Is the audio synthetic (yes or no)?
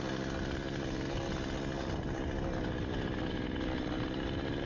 no